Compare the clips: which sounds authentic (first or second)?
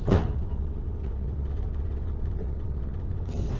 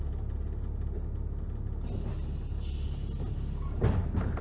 second